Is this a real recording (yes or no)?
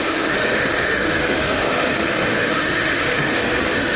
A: no